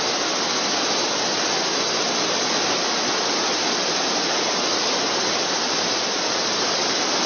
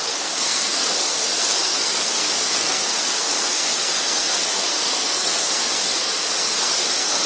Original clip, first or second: first